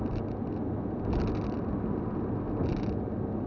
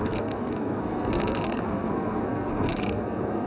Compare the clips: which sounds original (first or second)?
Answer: first